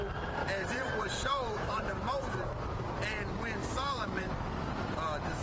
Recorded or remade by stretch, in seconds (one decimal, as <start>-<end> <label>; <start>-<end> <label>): 0.0-0.4 recorded; 0.4-3.0 remade; 3.0-3.6 recorded; 3.6-4.3 remade; 4.3-5.4 recorded